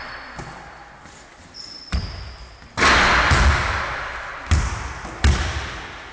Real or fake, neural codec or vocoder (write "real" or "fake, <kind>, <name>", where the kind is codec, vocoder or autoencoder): real